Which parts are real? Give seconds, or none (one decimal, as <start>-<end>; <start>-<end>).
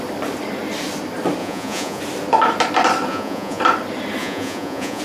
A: 0.0-1.4; 2.0-3.1; 3.6-4.2